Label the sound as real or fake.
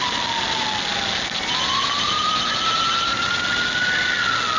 real